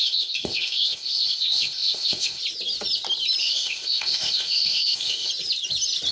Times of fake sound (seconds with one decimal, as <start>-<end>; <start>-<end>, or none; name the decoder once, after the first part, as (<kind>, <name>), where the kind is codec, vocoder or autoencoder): 0.0-2.4 (codec, ZipCodec); 3.4-5.3